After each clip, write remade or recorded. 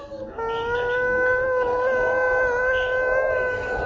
recorded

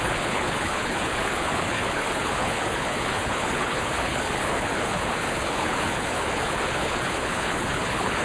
remade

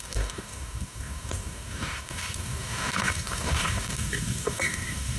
remade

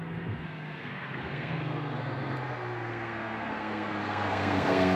remade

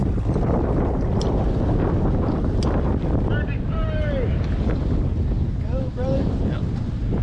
recorded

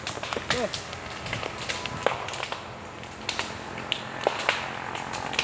recorded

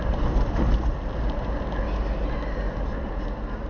recorded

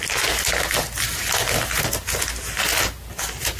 recorded